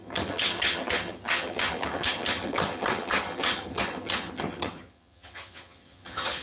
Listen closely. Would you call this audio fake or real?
fake